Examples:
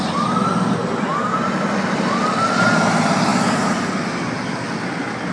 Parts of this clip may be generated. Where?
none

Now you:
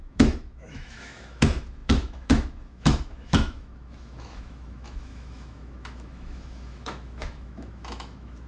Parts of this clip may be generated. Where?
0.0-8.5 (autoencoder, DAC-VAE)

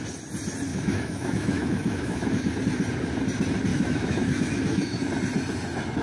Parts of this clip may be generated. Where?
0.7-2.5 (autoencoder, DAC-VAE); 3.7-5.1

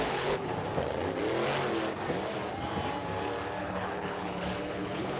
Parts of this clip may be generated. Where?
0.0-0.5 (codec, HILCodec); 3.6-5.2

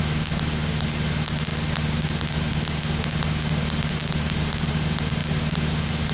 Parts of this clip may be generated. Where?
none